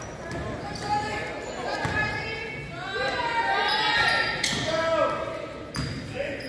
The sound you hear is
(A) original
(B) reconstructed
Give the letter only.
A